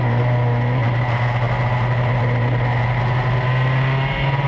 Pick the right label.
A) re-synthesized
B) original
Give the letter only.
B